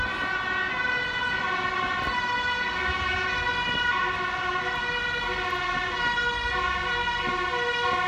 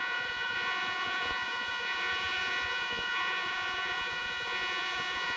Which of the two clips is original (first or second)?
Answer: first